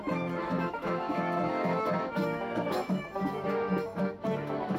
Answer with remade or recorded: remade